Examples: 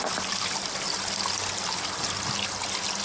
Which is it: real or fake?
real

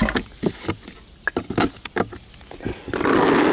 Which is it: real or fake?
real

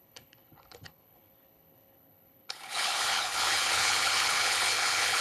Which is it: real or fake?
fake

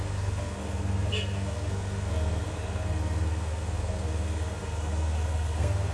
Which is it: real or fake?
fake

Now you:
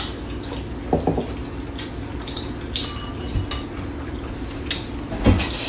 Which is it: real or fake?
real